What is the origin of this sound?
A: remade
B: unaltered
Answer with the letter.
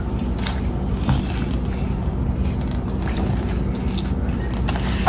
B